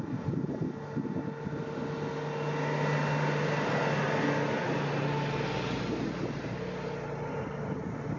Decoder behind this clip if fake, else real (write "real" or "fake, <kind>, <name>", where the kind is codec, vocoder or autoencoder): real